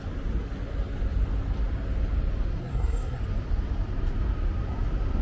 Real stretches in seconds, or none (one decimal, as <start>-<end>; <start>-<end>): 0.0-2.6; 3.2-5.2

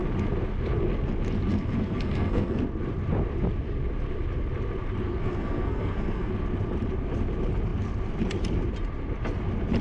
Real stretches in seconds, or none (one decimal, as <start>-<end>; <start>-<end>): 0.0-1.5; 2.6-5.2; 6.3-9.8